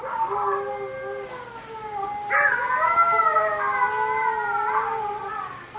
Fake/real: real